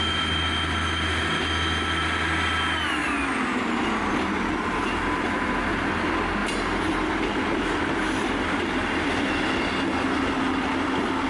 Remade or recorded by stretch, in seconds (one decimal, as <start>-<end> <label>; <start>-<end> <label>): 0.0-11.3 recorded